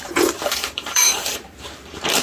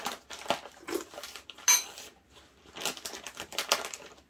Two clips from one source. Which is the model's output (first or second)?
first